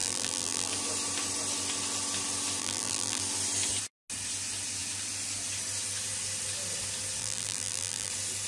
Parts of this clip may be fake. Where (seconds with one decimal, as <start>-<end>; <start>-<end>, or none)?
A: 0.0-0.7; 2.6-3.2; 7.2-8.1